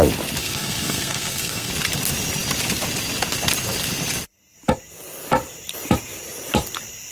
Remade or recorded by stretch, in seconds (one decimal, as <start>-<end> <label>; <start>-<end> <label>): 0.0-0.4 recorded; 0.4-1.7 remade; 1.7-7.1 recorded